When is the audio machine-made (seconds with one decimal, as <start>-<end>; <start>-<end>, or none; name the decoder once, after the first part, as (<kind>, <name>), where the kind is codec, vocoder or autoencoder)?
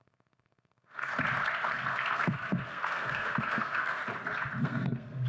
0.0-1.1 (codec, SNAC); 1.7-4.0; 4.6-5.3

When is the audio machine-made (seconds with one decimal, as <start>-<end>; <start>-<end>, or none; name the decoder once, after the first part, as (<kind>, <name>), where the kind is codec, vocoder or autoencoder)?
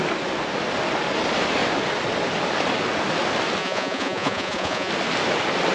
3.6-4.9 (vocoder, Vocos)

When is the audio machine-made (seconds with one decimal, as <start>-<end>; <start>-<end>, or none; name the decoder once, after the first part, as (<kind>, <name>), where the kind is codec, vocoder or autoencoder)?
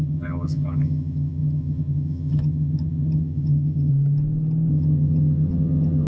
0.0-3.9 (vocoder, HiFi-GAN); 4.7-6.1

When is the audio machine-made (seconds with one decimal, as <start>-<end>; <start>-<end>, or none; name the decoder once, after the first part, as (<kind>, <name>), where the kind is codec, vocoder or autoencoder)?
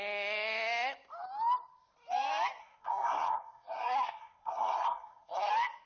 2.6-5.5 (codec, SNAC)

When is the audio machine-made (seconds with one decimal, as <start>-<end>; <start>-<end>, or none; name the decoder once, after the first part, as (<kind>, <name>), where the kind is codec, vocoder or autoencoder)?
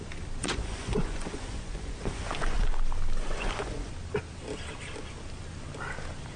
0.4-2.8 (vocoder, Vocos); 3.2-3.9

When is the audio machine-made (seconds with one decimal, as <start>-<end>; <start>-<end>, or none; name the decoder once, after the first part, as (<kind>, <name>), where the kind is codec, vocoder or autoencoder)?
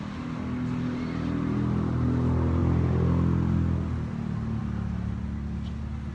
none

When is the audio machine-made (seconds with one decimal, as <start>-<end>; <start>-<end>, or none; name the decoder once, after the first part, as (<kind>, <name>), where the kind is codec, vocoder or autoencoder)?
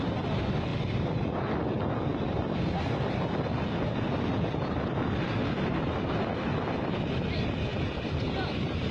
0.7-1.7 (vocoder, BigVGAN v2); 2.1-2.8; 7.7-8.9